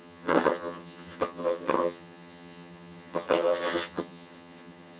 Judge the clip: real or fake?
fake